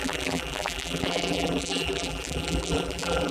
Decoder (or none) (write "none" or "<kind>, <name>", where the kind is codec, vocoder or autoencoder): vocoder, BigVGAN v2